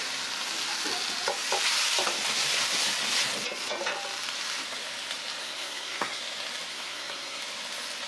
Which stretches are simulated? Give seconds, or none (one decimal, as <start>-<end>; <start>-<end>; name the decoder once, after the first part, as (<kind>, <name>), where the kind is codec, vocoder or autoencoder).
5.4-6.2 (codec, SNAC); 6.7-7.4